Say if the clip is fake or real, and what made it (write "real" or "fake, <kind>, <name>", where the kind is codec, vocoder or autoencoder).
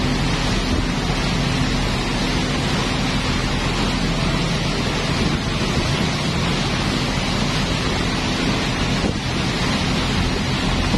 real